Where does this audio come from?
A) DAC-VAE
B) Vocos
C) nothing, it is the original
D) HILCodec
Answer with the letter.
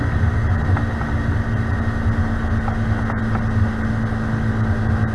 C